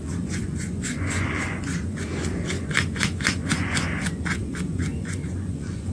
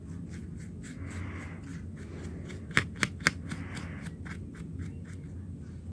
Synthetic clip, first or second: first